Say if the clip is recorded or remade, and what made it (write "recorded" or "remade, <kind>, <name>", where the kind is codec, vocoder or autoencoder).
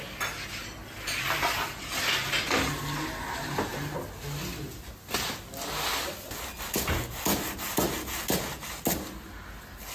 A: recorded